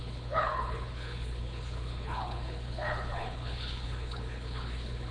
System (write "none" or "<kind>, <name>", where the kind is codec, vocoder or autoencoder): codec, HILCodec